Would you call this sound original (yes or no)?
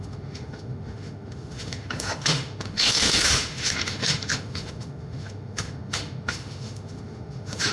no